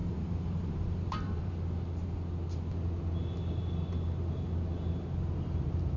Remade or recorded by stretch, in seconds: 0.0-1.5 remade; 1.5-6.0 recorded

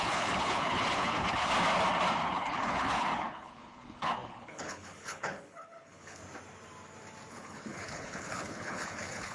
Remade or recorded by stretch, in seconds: 0.0-1.5 remade; 1.5-2.2 recorded; 2.2-6.2 remade; 6.2-7.3 recorded; 7.3-9.3 remade

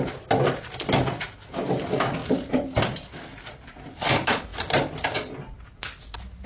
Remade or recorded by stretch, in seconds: 0.0-6.5 recorded